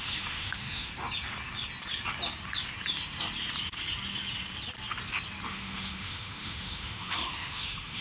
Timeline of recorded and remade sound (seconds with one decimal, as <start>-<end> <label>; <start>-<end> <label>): 0.0-0.9 remade; 0.9-5.5 recorded; 5.5-8.0 remade